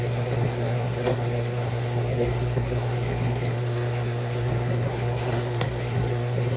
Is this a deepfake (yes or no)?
yes